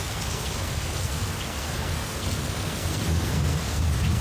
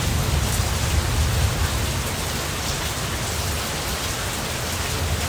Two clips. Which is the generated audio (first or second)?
first